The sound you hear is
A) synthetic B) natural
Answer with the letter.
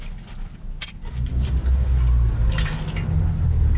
B